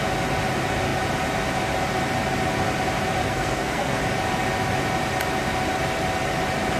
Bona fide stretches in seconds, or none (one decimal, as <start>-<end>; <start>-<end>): 0.0-3.2; 4.0-6.8